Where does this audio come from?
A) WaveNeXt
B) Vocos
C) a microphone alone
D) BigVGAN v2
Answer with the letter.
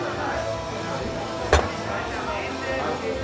C